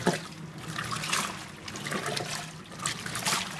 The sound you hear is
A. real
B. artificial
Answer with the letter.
A